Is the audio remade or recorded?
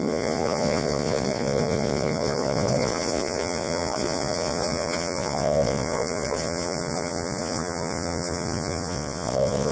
remade